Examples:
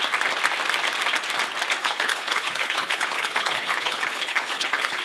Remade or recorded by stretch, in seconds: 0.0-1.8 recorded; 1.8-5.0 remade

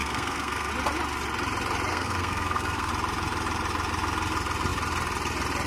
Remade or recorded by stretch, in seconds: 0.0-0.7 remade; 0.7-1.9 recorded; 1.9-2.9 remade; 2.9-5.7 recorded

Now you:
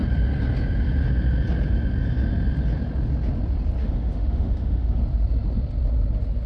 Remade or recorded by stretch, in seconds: 0.0-3.8 recorded; 3.8-5.0 remade; 5.0-6.5 recorded

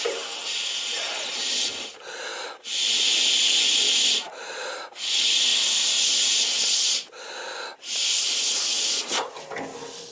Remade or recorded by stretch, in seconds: 0.0-10.1 recorded

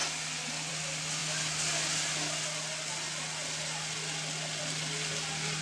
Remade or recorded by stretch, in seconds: 0.0-5.6 recorded

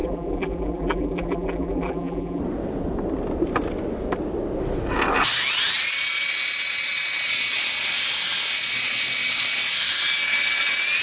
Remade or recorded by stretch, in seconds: 0.0-2.4 remade; 2.4-11.0 recorded

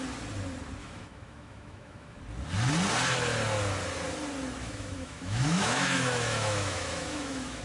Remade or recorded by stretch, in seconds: 0.0-0.8 recorded; 0.8-2.2 remade; 2.2-4.6 recorded; 4.6-7.6 remade

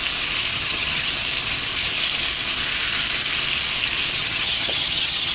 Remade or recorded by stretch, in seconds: 0.0-0.5 recorded; 0.5-1.1 remade; 1.1-4.2 recorded; 4.2-5.3 remade